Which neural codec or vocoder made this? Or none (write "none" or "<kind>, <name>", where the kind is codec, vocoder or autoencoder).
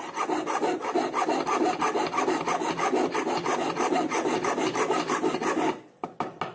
none